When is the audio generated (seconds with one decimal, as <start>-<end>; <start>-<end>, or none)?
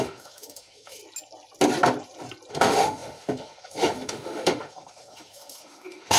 0.0-1.0; 2.5-6.2